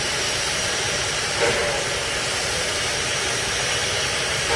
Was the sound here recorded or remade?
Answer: remade